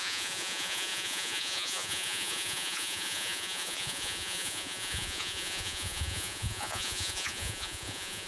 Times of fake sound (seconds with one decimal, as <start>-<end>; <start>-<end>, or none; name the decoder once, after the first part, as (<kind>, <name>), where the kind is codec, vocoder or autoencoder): 0.0-8.3 (vocoder, Vocos)